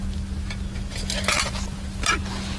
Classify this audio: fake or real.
real